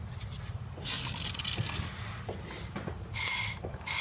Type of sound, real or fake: real